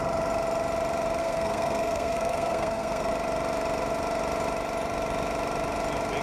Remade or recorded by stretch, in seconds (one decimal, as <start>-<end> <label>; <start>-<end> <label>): 0.0-1.2 recorded; 1.2-3.1 remade; 3.1-6.2 recorded